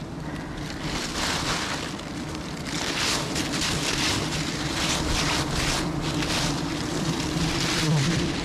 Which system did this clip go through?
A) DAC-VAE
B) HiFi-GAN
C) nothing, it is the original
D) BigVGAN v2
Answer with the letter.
D